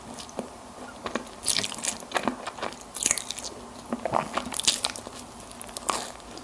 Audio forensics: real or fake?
real